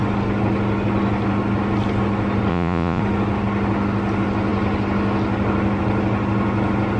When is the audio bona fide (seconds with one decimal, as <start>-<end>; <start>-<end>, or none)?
0.0-2.5; 3.0-7.0